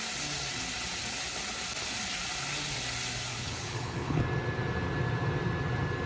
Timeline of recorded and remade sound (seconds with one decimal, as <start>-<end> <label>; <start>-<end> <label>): 0.0-3.3 recorded; 3.3-4.2 remade; 4.2-6.1 recorded